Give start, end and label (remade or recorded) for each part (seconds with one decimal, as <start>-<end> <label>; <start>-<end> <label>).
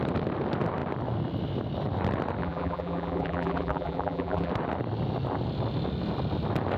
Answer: 0.0-2.4 recorded; 2.4-4.5 remade; 4.5-6.8 recorded